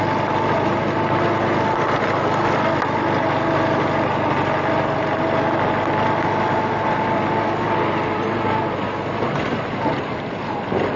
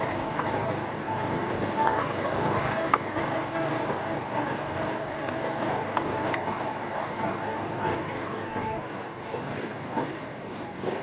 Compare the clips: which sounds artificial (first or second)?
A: second